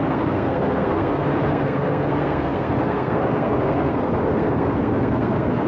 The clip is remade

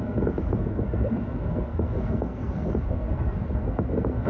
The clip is remade